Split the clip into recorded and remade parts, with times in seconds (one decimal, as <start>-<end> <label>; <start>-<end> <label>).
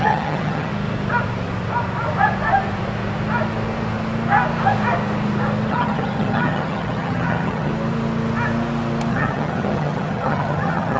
0.0-0.7 remade; 0.7-5.7 recorded; 5.7-7.7 remade; 7.7-9.1 recorded; 9.1-11.0 remade